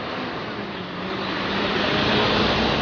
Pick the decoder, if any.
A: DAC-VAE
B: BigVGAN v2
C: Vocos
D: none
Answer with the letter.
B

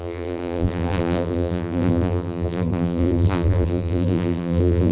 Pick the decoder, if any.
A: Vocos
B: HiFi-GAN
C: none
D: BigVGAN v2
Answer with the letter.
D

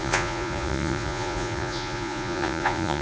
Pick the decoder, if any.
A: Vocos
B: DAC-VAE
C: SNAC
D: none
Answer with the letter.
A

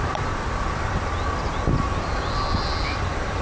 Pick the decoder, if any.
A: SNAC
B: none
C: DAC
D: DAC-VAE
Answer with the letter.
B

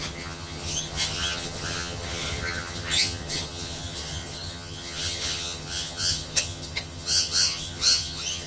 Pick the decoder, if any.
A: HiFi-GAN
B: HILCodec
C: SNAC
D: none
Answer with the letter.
A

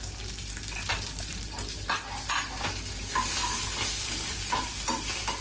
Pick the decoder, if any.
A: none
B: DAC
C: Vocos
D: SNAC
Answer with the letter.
A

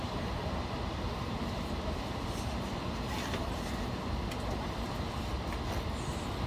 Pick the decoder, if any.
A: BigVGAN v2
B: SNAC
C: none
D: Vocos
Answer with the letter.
C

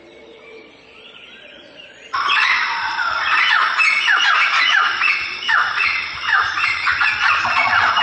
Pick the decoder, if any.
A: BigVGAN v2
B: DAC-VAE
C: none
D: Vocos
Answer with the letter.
D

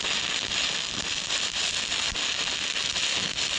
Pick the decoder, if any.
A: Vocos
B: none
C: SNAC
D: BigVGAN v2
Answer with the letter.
B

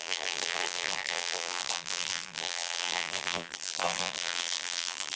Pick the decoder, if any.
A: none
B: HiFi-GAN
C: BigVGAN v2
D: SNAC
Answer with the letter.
C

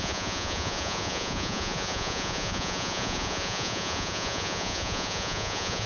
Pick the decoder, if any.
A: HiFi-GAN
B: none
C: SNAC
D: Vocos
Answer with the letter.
D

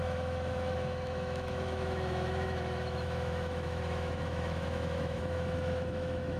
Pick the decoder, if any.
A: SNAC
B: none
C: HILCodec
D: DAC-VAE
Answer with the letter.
D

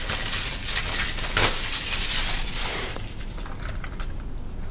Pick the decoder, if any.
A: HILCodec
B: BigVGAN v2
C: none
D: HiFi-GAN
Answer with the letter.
B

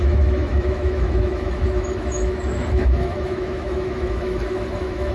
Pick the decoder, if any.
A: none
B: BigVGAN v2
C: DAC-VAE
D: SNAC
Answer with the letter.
C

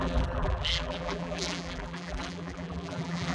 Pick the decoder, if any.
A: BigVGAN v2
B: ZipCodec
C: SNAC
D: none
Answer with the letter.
A